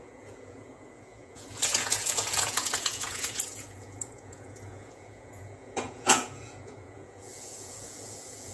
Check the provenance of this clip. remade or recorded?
remade